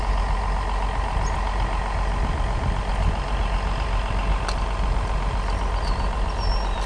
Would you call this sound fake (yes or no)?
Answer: no